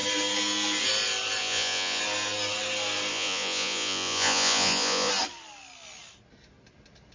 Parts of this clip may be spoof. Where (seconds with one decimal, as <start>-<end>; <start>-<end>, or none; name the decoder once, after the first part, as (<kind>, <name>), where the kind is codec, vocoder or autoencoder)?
1.4-2.0 (vocoder, Vocos); 3.1-5.1